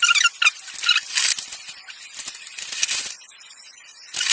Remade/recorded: recorded